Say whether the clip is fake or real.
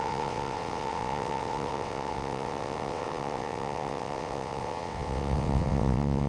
fake